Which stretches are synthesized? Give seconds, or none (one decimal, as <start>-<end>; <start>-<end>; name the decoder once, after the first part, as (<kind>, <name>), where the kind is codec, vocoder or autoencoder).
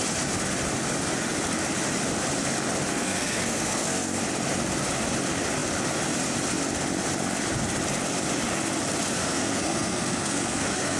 2.9-4.2 (codec, SNAC); 9.2-11.0